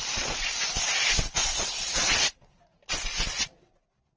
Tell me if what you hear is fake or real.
real